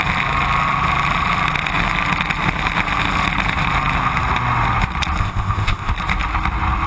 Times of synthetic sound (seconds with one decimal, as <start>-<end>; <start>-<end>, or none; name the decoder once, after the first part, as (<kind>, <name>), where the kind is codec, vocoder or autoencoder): 5.2-5.9 (codec, ZipCodec)